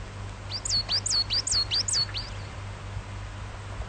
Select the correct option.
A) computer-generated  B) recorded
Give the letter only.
B